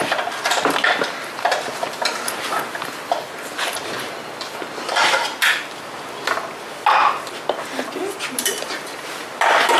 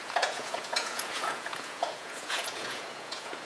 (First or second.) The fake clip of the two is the second